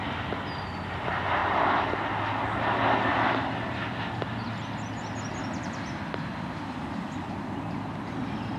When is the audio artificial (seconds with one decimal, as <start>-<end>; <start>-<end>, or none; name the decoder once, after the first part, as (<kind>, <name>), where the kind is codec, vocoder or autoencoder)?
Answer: 6.3-7.3 (vocoder, BigVGAN v2)